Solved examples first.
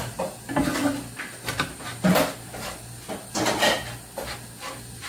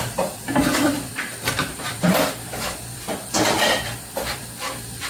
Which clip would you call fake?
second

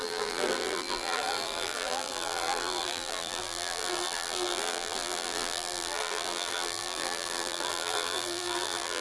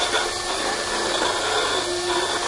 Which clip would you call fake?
first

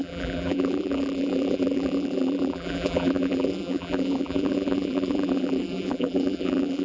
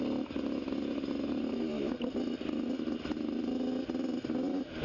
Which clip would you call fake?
first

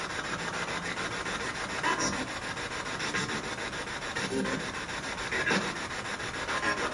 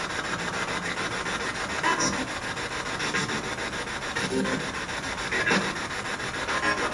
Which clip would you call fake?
first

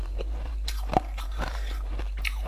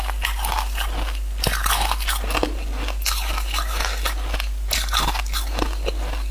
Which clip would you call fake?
first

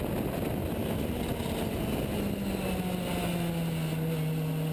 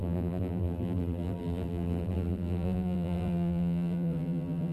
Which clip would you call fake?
second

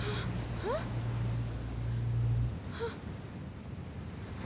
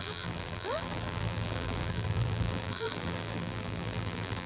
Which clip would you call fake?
second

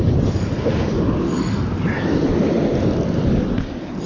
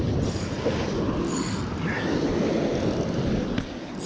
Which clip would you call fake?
first